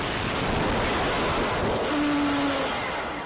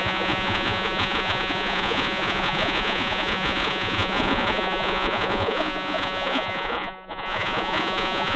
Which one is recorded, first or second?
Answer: first